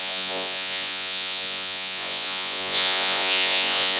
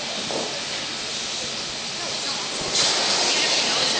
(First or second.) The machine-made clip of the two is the first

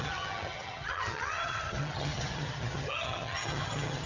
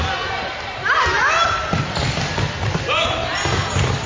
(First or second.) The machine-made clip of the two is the first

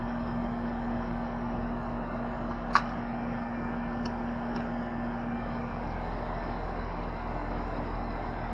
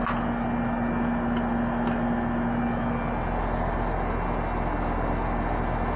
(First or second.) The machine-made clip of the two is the first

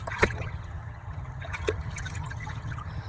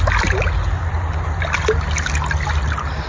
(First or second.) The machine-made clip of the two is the first